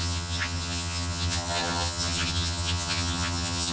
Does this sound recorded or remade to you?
remade